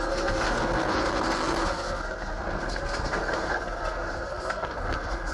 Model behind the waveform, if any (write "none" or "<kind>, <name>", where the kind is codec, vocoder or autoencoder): codec, SNAC